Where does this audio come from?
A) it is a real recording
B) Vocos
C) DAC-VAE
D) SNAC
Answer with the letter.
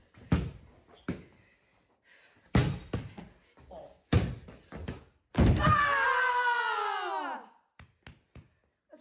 A